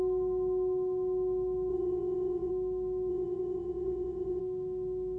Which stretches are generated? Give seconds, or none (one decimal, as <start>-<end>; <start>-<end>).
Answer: 1.7-2.5; 3.1-4.4